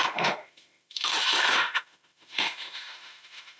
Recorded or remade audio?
remade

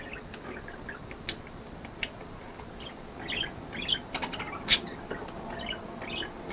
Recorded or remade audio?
recorded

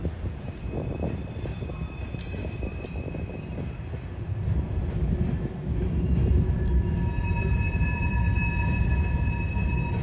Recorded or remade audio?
recorded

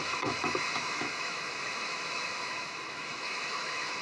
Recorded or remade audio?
remade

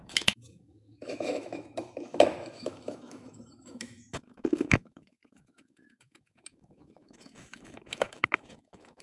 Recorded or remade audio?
remade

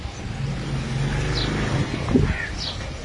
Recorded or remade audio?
recorded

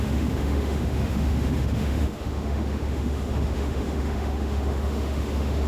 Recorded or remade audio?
remade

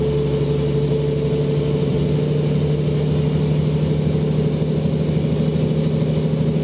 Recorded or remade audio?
recorded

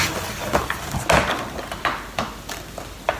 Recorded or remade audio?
recorded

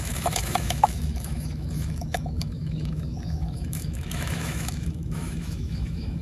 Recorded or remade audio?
remade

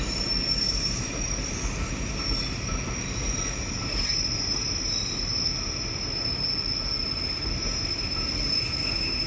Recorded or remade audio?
recorded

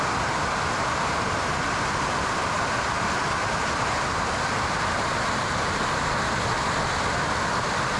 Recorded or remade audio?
recorded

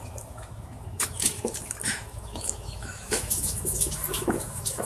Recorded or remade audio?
remade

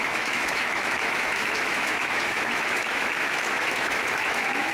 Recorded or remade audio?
remade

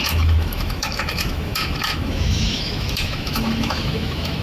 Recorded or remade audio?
remade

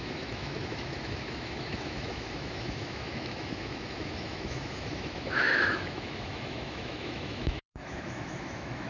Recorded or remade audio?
remade